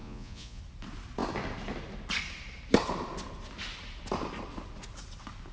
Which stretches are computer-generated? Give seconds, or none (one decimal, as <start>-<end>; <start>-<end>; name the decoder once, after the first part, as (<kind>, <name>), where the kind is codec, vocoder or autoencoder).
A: 0.0-0.6 (vocoder, Vocos)